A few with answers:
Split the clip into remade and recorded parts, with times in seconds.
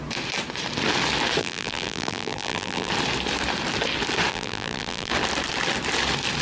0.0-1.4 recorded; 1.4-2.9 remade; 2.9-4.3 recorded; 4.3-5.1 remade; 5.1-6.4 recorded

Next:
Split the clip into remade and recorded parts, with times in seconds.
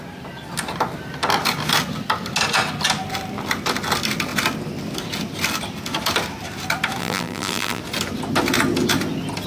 0.0-7.0 recorded; 7.0-7.8 remade; 7.8-9.5 recorded